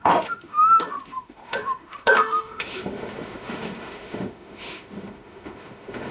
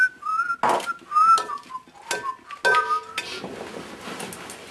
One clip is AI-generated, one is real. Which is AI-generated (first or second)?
first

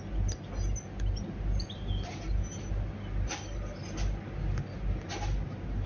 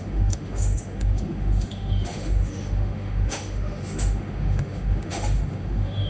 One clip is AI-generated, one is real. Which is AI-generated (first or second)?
second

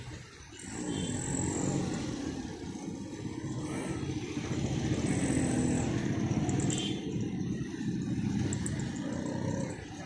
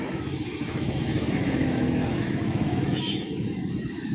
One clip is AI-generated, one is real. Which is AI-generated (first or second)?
second